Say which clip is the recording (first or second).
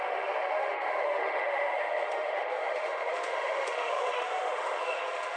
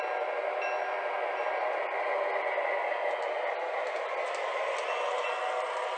second